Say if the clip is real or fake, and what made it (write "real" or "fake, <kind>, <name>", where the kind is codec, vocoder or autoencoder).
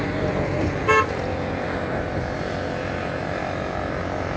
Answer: real